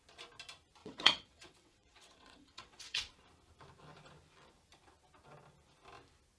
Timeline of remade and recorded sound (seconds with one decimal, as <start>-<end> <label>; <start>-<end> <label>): 0.0-0.8 recorded; 0.8-3.1 remade; 3.1-6.4 recorded